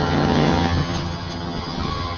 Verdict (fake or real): fake